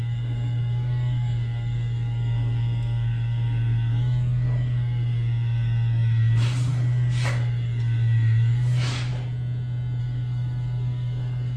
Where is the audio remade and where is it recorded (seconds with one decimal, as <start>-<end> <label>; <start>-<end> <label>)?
0.0-9.1 remade; 9.1-10.0 recorded; 10.0-11.6 remade

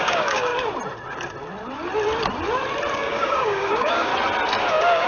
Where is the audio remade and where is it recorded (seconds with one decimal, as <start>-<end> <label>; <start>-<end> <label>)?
0.0-0.5 remade; 0.5-2.9 recorded; 2.9-4.1 remade; 4.1-4.6 recorded; 4.6-5.1 remade

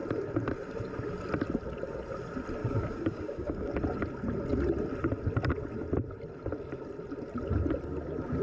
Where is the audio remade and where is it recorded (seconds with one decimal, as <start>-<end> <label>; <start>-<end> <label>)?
0.0-2.6 recorded; 2.6-3.7 remade; 3.7-8.4 recorded

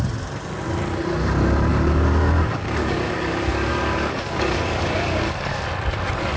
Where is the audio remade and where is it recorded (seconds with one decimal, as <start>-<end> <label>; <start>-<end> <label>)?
0.0-1.7 recorded; 1.7-5.5 remade; 5.5-6.4 recorded

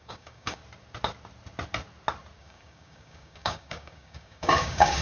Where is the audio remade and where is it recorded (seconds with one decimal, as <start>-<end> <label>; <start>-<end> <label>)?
0.0-0.6 remade; 0.6-2.4 recorded; 2.4-5.0 remade